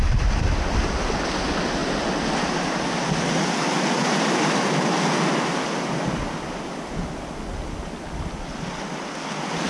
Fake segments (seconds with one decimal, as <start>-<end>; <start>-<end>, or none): none